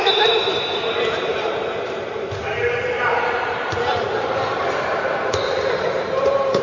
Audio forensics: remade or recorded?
remade